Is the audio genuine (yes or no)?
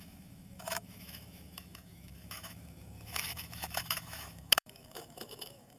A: no